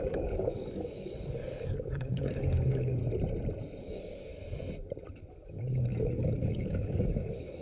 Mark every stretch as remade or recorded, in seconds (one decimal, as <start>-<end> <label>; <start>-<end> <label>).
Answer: 0.0-3.0 remade; 3.0-3.8 recorded; 3.8-4.3 remade; 4.3-5.3 recorded; 5.3-7.6 remade